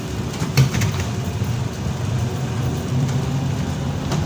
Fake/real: fake